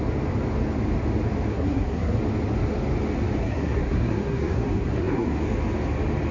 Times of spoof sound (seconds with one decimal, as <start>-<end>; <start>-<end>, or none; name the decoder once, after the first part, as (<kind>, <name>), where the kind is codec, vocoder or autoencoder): 1.5-2.2 (codec, SNAC); 3.4-5.4